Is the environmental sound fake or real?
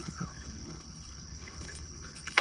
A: fake